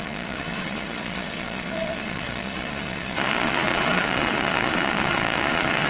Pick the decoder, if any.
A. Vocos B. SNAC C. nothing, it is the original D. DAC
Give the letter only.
A